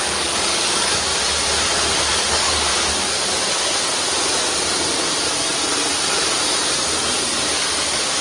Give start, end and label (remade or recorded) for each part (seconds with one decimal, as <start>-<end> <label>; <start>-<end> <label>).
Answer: 0.0-1.1 remade; 1.1-2.3 recorded; 2.3-2.7 remade; 2.7-7.5 recorded; 7.5-8.2 remade